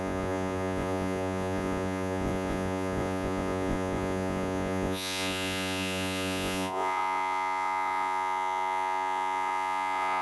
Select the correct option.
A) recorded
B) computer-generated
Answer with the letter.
B